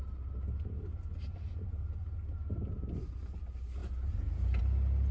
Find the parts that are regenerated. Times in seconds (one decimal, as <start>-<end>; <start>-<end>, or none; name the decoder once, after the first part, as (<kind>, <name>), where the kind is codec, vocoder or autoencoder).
none